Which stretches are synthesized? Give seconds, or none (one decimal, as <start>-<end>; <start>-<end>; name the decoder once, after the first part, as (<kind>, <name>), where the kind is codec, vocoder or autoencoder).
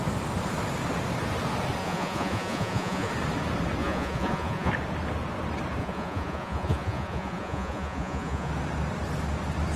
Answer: 1.8-3.1 (vocoder, Vocos); 3.8-4.7; 5.8-8.5